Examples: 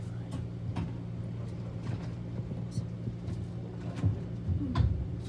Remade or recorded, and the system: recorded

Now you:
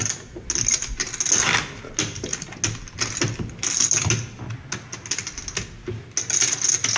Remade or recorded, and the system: recorded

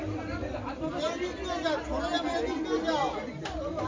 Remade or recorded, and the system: recorded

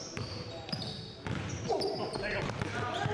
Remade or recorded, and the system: recorded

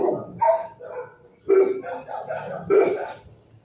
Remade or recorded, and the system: recorded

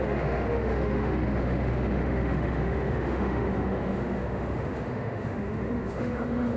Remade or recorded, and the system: remade, autoencoder, DAC-VAE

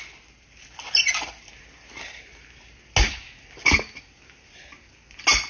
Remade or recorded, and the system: recorded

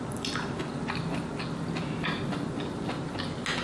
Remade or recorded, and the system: recorded